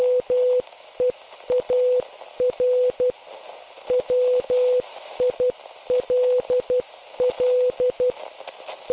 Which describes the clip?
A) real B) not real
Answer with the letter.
A